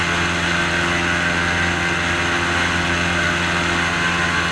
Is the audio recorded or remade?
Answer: recorded